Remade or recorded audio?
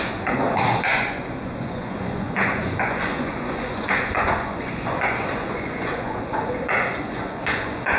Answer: remade